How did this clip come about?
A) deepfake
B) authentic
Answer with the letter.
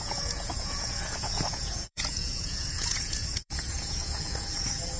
A